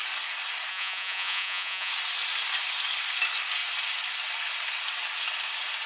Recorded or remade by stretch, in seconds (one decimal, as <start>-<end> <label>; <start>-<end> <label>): 0.0-0.7 recorded; 0.7-1.9 remade; 1.9-5.9 recorded